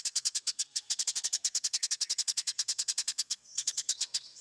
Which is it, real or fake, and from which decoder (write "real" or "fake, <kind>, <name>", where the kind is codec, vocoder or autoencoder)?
fake, codec, SNAC